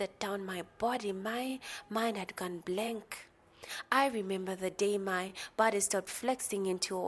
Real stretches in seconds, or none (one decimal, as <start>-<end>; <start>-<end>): 0.0-1.5; 3.7-7.1

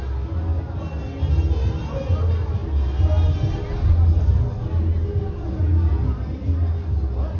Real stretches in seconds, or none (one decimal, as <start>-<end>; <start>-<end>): 0.0-7.4

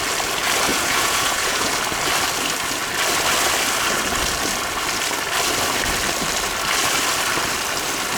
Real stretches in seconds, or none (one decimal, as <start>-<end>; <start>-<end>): 0.0-0.7; 1.7-8.2

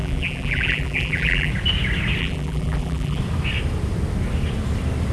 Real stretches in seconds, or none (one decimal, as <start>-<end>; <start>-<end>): 1.5-2.2; 3.2-5.1

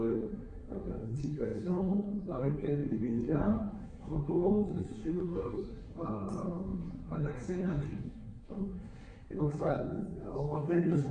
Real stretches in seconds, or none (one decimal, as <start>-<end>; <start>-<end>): none